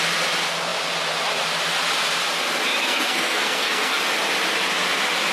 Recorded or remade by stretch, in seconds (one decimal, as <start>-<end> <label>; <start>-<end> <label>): 0.0-2.8 recorded; 2.8-3.9 remade; 3.9-5.3 recorded